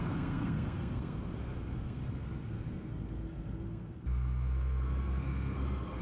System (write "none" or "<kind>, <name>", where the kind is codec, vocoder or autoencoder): codec, SNAC